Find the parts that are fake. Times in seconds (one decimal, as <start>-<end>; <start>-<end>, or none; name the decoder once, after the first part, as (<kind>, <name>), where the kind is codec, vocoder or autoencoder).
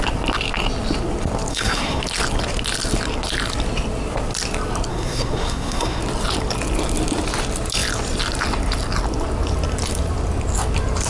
1.5-2.0 (codec, SNAC); 4.9-6.0